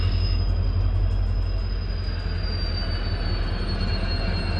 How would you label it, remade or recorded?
recorded